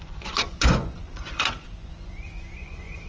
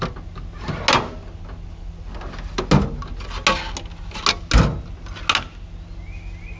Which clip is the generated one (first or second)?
first